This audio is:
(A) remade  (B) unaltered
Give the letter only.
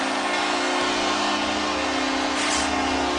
B